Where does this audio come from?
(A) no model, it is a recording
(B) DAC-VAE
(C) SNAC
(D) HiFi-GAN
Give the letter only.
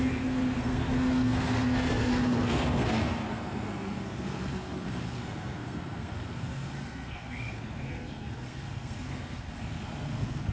C